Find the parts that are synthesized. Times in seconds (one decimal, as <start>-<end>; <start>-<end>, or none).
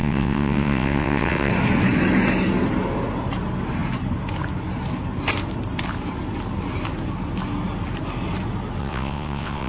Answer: 0.0-1.5; 8.8-9.7